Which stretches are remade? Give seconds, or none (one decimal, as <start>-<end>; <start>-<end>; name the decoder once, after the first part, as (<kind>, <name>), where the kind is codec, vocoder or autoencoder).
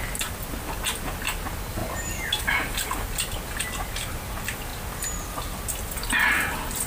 none